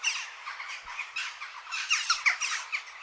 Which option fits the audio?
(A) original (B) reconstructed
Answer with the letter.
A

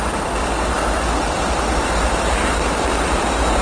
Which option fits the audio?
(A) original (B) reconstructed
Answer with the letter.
B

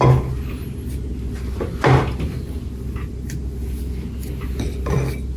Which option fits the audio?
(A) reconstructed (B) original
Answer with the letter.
B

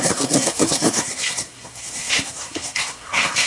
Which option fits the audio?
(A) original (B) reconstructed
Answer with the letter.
B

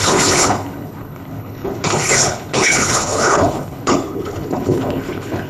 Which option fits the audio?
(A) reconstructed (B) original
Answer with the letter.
A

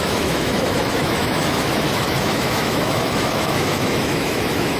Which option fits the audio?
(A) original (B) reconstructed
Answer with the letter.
B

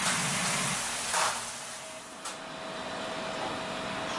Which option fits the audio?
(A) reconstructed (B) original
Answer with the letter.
B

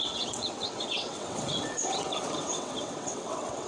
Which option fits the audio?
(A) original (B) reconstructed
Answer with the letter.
B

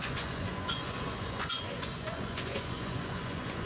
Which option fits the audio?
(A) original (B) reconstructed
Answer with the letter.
B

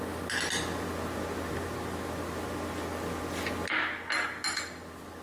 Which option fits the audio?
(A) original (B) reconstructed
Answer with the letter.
A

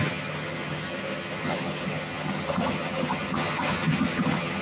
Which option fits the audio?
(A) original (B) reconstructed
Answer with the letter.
B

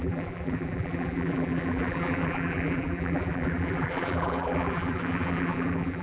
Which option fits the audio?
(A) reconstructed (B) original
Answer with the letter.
A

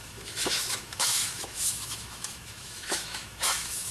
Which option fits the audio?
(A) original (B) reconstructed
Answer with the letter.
B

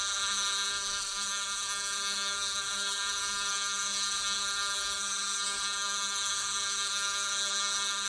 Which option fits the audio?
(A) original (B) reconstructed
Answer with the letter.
B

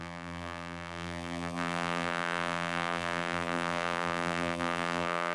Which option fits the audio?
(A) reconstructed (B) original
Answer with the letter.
A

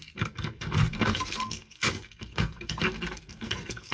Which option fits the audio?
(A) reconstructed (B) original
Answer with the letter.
A